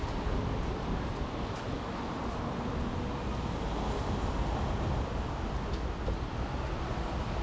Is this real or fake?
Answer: real